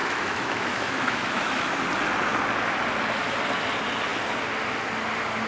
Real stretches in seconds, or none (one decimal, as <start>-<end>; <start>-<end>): 1.8-5.5